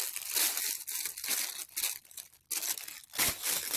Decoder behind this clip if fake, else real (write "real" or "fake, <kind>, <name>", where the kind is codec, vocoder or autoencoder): real